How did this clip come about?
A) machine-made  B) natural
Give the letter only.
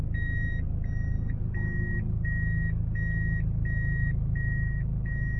B